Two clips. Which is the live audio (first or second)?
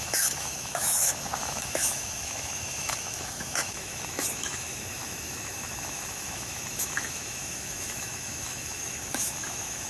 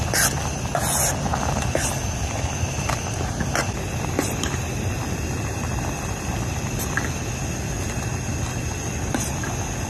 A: second